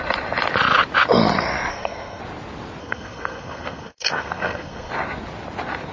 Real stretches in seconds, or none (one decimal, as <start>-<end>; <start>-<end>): 0.0-1.7; 2.2-2.8; 4.9-5.9